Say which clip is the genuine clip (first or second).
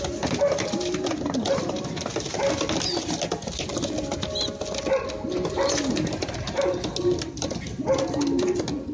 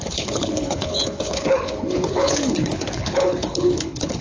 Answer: first